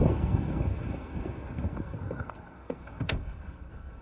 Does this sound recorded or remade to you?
remade